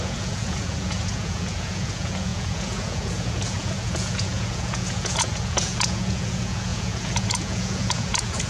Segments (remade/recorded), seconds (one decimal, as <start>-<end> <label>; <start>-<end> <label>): 0.0-8.5 remade